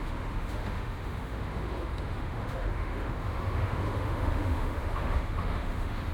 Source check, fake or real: fake